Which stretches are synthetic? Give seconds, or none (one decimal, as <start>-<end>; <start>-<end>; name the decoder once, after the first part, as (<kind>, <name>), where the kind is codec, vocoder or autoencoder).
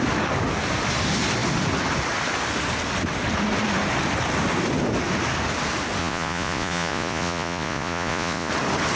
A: 6.0-8.5 (vocoder, Vocos)